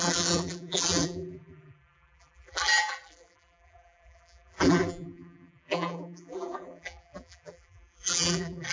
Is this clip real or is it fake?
fake